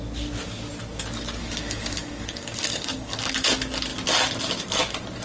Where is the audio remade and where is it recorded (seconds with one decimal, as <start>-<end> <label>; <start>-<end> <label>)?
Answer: 0.0-1.4 recorded; 1.4-3.3 remade; 3.3-5.2 recorded